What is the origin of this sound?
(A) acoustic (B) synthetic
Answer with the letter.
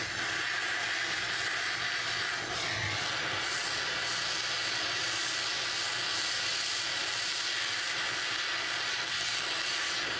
A